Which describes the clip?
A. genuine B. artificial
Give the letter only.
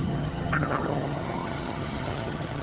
B